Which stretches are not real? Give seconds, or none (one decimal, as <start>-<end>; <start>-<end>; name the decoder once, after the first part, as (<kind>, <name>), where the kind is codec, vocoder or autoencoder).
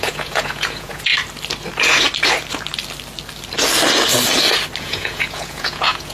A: 0.0-1.1 (vocoder, Vocos); 4.8-6.1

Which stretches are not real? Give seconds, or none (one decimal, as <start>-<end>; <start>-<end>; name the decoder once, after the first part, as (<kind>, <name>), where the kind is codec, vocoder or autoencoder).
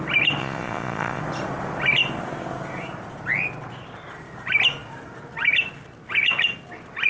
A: 0.4-1.2 (vocoder, Vocos)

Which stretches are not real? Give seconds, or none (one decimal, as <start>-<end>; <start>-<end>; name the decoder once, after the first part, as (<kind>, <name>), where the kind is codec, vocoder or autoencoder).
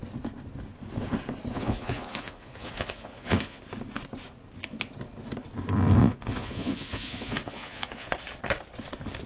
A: 1.5-3.6 (vocoder, Vocos); 6.0-8.1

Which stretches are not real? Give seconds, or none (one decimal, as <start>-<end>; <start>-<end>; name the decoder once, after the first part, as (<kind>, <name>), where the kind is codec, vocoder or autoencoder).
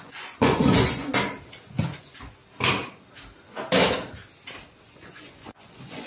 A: 0.0-1.1 (vocoder, Vocos); 1.6-2.4; 4.9-6.1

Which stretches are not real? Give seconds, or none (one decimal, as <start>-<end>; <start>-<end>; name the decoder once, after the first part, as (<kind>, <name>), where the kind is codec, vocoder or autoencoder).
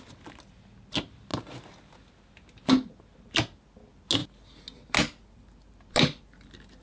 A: none